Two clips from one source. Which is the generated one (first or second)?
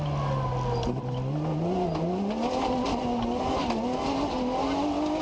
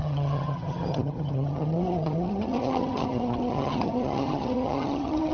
second